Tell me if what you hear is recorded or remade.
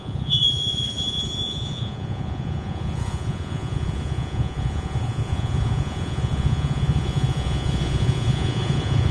remade